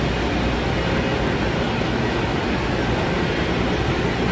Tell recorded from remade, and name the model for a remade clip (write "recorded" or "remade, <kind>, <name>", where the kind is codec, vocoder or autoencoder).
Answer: recorded